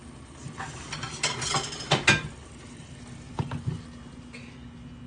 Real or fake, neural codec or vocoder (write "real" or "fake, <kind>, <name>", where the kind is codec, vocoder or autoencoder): real